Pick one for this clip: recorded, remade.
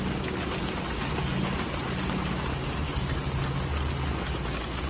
recorded